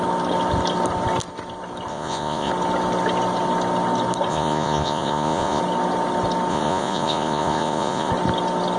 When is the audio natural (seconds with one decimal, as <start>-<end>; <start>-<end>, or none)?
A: 0.0-1.9; 2.5-4.3; 5.6-6.5; 8.1-8.8